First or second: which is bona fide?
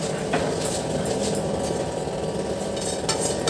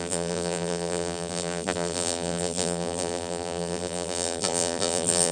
first